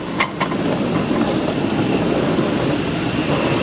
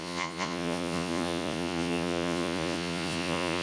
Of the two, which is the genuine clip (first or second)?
first